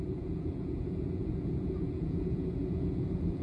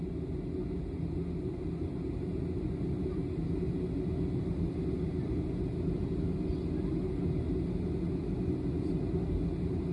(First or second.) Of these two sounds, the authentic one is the second